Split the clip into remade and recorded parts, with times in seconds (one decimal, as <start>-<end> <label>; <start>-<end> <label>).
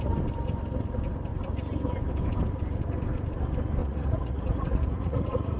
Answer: 0.0-3.8 recorded; 3.8-5.6 remade